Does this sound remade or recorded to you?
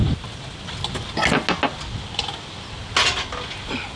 recorded